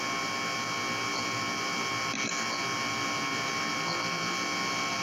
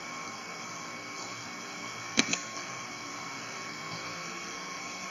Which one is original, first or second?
first